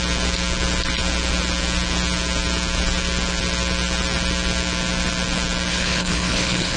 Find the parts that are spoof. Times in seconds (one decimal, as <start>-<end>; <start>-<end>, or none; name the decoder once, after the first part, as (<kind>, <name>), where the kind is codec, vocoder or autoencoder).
5.7-6.8 (codec, HILCodec)